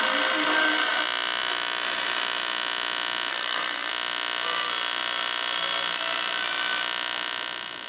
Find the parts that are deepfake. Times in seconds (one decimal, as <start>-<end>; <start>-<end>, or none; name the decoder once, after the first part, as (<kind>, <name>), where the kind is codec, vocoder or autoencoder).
3.3-3.9 (codec, SNAC)